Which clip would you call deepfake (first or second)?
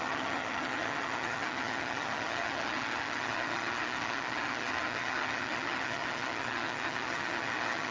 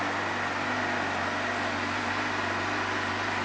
first